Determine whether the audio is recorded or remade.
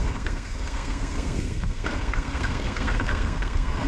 remade